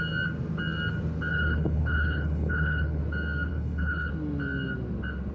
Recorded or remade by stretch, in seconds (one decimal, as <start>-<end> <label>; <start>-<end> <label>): 0.0-1.3 recorded; 1.3-3.0 remade; 3.0-3.5 recorded; 3.5-4.1 remade; 4.1-5.3 recorded